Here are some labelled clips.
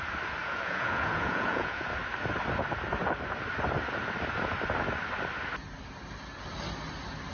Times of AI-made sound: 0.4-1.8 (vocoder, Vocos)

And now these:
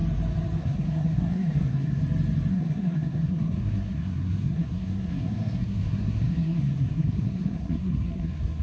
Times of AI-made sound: 0.6-2.0 (codec, SNAC); 2.5-8.6